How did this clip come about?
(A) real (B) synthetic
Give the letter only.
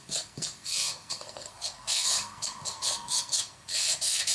B